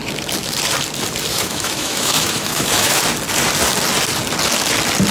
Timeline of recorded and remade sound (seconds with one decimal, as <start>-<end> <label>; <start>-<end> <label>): 0.0-1.3 recorded; 1.3-3.0 remade; 3.0-5.1 recorded